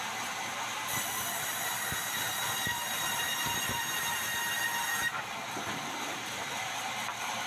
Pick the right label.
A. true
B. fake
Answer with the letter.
B